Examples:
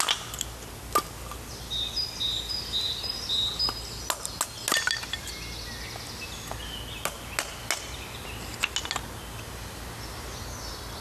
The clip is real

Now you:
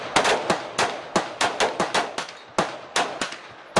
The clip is real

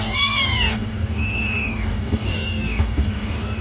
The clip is fake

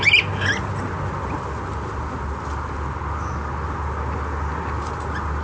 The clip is real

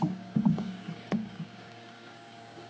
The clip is fake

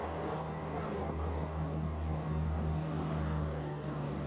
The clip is fake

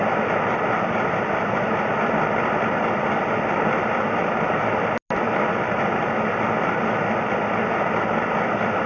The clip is real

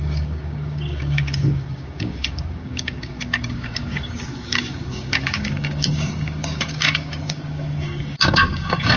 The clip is fake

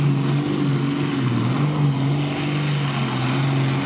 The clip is real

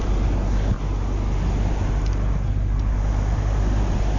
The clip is real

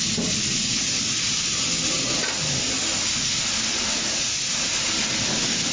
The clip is real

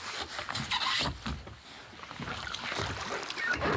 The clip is real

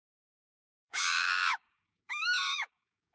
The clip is fake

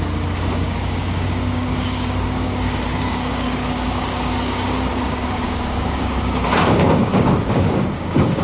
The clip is fake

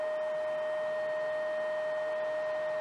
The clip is real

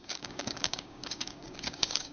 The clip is fake